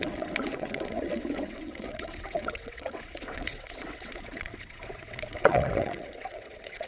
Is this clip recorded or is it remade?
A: remade